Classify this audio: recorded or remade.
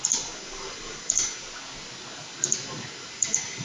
recorded